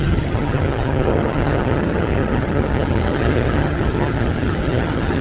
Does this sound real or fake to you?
fake